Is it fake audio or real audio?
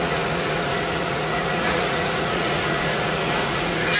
fake